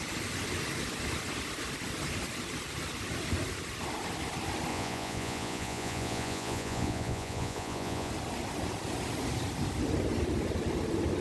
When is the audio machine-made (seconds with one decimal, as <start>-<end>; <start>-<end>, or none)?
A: 4.7-8.1